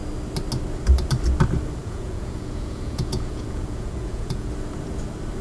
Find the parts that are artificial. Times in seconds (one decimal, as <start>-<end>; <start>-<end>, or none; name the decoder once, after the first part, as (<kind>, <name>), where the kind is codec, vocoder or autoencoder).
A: 1.8-4.5 (vocoder, Vocos)